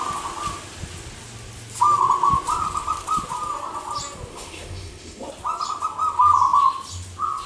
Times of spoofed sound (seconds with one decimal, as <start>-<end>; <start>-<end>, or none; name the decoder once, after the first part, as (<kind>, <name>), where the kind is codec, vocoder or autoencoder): 4.3-5.3 (autoencoder, DAC-VAE)